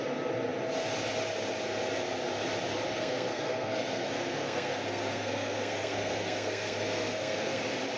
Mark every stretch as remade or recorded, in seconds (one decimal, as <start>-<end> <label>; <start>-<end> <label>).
0.0-2.9 recorded; 2.9-7.6 remade; 7.6-8.0 recorded